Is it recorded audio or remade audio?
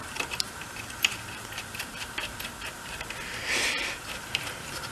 remade